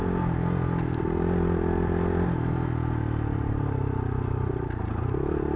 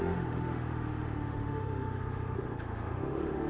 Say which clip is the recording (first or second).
first